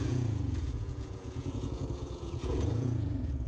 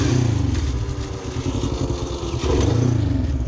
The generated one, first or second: first